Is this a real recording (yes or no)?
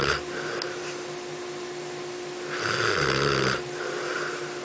yes